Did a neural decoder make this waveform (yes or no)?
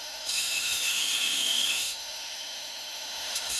yes